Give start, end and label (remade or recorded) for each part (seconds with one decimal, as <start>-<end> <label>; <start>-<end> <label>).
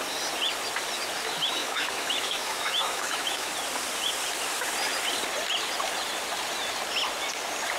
0.0-1.6 recorded; 1.6-3.5 remade; 3.5-7.8 recorded